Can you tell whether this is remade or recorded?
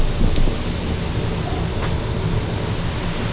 recorded